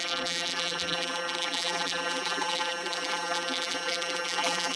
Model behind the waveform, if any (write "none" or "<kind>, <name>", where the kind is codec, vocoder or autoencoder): vocoder, BigVGAN v2